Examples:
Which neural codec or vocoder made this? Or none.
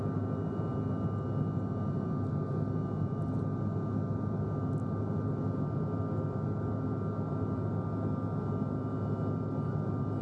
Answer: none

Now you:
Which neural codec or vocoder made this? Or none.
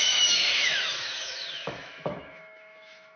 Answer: autoencoder, DAC-VAE